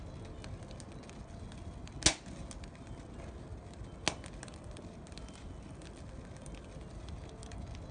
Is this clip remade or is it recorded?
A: recorded